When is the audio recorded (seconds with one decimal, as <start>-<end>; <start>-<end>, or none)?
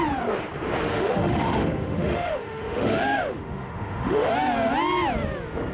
0.0-0.9; 4.3-5.7